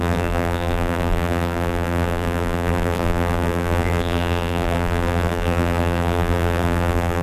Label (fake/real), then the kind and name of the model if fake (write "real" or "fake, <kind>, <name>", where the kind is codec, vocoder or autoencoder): fake, vocoder, BigVGAN v2